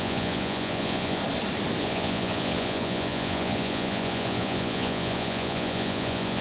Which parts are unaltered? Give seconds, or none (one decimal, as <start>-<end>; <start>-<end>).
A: 1.2-1.8